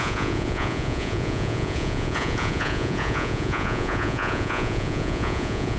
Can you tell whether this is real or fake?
fake